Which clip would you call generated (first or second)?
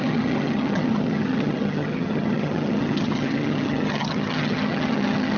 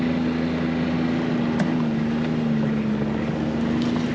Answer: first